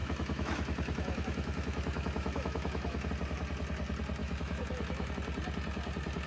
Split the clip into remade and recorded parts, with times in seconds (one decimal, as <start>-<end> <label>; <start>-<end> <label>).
0.0-3.1 remade; 3.1-4.2 recorded; 4.2-5.1 remade; 5.1-6.3 recorded